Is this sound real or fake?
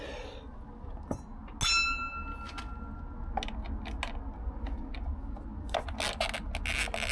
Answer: real